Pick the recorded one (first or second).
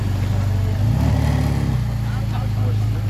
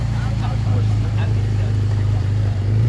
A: first